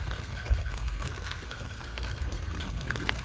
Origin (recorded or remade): remade